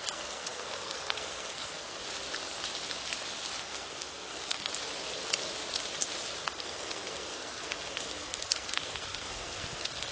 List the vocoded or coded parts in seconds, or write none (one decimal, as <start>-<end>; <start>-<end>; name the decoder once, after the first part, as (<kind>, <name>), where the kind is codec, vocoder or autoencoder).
0.0-2.0 (codec, SNAC); 3.6-4.7; 6.4-10.1